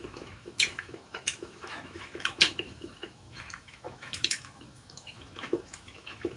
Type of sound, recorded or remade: remade